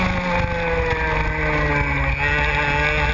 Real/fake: real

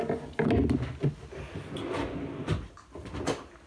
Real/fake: real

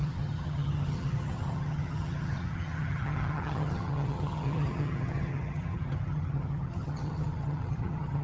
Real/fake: fake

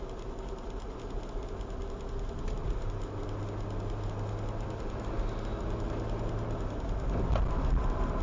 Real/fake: real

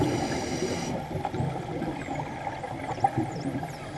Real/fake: fake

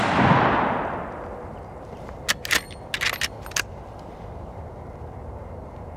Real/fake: real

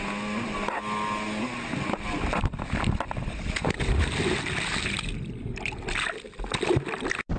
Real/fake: real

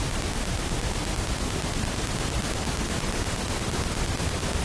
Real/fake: real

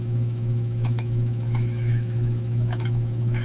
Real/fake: fake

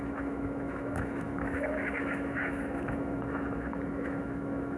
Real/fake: fake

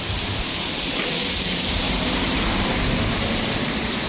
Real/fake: fake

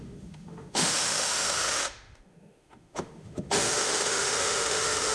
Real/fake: fake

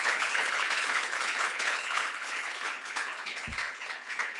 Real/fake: fake